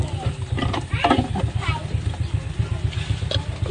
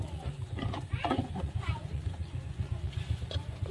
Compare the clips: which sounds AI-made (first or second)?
second